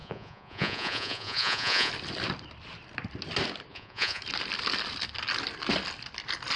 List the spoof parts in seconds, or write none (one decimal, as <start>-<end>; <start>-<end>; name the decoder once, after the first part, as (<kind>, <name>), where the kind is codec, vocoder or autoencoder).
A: 0.0-1.9 (vocoder, Vocos); 3.7-4.2